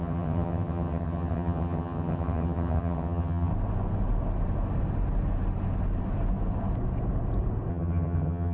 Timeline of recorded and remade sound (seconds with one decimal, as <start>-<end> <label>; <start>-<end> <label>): 0.0-3.5 remade; 3.5-7.7 recorded; 7.7-8.5 remade